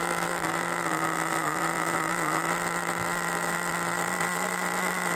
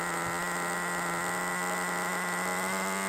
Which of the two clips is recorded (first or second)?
second